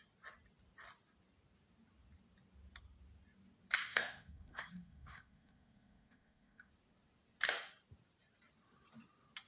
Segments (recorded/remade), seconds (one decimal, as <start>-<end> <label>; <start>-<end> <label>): 0.0-3.8 recorded; 3.8-6.7 remade; 6.7-9.5 recorded